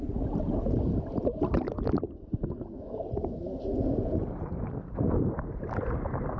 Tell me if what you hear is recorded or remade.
recorded